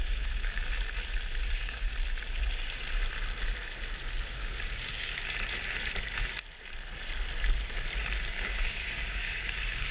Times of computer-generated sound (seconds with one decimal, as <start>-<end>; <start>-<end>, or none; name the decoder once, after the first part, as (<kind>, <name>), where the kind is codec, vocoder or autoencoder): 0.0-0.6 (codec, DAC); 1.5-1.9; 4.3-5.1; 8.3-9.9